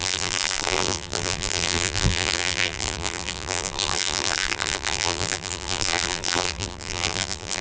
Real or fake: fake